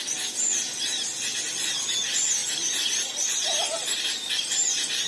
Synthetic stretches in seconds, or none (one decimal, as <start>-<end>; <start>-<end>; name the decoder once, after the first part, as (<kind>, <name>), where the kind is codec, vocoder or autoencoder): none